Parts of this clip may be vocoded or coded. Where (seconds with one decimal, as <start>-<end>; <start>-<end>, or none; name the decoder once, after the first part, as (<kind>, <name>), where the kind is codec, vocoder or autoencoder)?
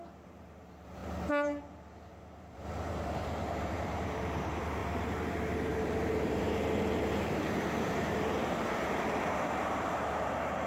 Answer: 0.0-1.0 (vocoder, BigVGAN v2); 1.6-10.7